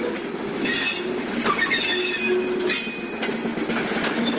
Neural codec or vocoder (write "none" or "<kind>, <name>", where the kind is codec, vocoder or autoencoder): none